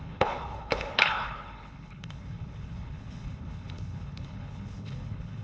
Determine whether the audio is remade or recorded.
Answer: remade